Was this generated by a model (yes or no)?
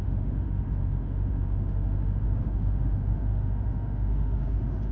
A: yes